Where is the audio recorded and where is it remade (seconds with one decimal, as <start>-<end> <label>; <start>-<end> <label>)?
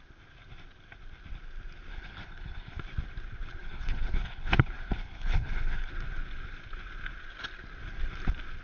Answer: 0.0-1.9 recorded; 1.9-2.8 remade; 2.8-3.6 recorded; 3.6-5.9 remade; 5.9-8.6 recorded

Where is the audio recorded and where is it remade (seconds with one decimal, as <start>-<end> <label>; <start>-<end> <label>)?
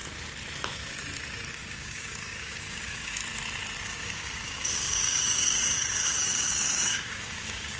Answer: 0.0-1.5 recorded; 1.5-3.2 remade; 3.2-3.8 recorded; 3.8-7.8 remade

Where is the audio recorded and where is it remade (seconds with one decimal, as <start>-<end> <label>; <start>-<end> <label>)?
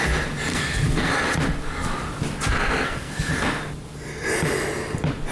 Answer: 0.0-0.5 recorded; 0.5-1.1 remade; 1.1-2.6 recorded; 2.6-3.3 remade; 3.3-5.3 recorded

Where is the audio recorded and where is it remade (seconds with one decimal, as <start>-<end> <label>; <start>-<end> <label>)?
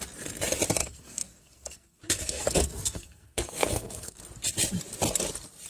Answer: 0.0-0.8 recorded; 0.8-4.2 remade; 4.2-5.7 recorded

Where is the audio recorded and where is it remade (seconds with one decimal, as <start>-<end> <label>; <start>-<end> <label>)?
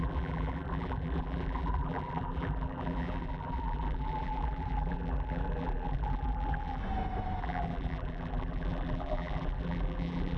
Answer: 0.0-6.8 remade; 6.8-7.4 recorded; 7.4-10.4 remade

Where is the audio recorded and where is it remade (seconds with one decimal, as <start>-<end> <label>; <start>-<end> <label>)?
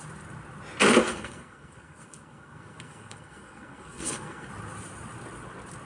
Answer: 0.0-1.0 recorded; 1.0-4.5 remade; 4.5-5.9 recorded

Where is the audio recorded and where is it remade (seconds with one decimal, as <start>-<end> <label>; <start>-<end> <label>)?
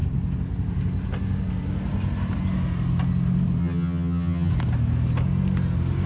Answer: 0.0-3.6 recorded; 3.6-4.5 remade; 4.5-6.1 recorded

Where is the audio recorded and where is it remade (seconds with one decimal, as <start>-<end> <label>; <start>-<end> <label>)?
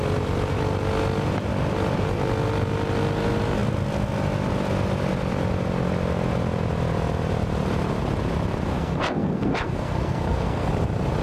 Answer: 0.0-8.7 recorded; 8.7-10.7 remade; 10.7-11.2 recorded